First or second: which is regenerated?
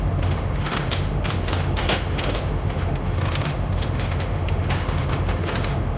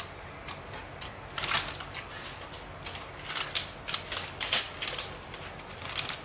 first